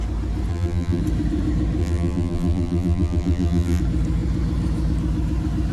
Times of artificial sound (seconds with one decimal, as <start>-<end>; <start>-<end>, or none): 0.5-1.0; 1.8-3.8